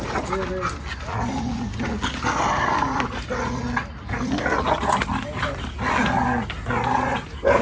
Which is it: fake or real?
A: real